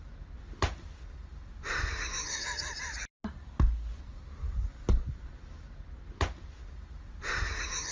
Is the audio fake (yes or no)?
no